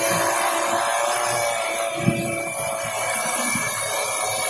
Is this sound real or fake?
real